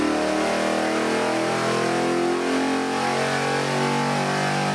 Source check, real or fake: real